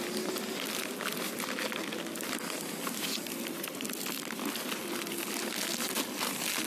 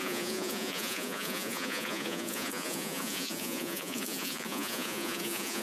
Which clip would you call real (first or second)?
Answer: first